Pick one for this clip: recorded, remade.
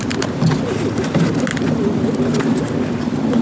recorded